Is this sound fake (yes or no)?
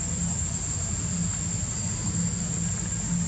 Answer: no